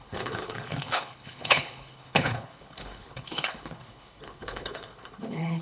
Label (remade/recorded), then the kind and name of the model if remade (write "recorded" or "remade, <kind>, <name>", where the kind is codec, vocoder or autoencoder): remade, codec, HILCodec